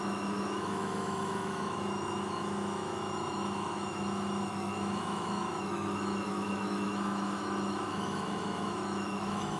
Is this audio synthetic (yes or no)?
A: yes